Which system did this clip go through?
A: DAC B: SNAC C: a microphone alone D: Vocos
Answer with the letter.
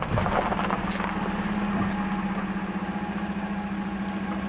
C